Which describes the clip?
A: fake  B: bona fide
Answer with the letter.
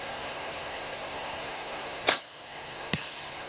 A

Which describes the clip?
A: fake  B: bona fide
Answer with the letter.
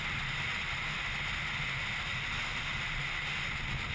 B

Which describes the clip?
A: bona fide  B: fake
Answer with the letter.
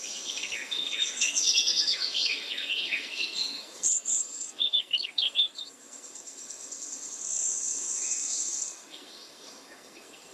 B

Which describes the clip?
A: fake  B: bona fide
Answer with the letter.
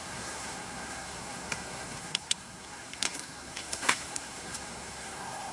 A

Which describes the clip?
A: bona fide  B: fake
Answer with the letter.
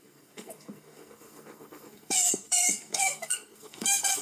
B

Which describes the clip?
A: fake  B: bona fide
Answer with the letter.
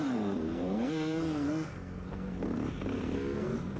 A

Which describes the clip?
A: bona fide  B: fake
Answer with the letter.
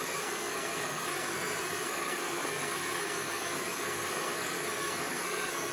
B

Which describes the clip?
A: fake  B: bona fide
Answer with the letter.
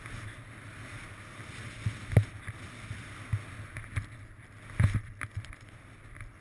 B